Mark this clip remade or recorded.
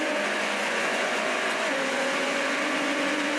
remade